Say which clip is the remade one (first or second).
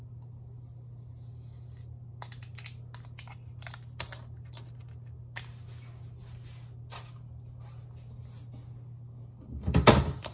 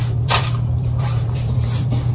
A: second